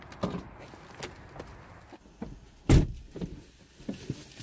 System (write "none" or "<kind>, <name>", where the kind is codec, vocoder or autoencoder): none